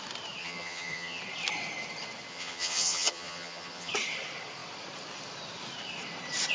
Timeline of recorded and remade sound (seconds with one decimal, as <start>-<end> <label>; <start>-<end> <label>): 0.0-0.4 recorded; 0.4-1.2 remade; 1.2-2.3 recorded; 2.3-3.9 remade; 3.9-6.5 recorded